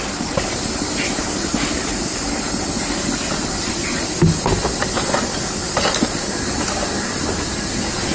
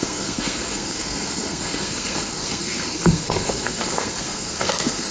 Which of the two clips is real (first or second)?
first